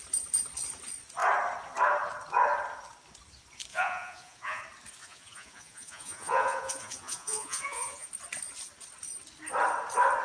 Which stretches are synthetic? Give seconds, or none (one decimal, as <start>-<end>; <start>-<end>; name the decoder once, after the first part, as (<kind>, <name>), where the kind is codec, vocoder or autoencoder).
3.7-4.6 (vocoder, Vocos); 5.0-8.1